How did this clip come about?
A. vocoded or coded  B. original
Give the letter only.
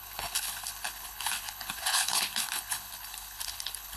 A